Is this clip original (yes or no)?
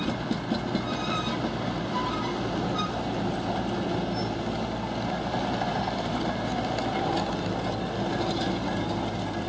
yes